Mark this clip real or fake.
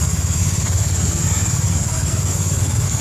fake